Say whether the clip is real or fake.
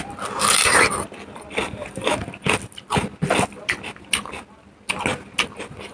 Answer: real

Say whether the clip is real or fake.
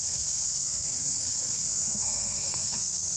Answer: fake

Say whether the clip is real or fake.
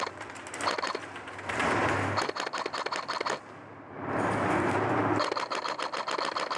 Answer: fake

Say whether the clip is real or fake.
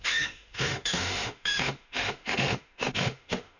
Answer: fake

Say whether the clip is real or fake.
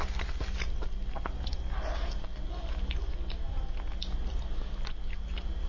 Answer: real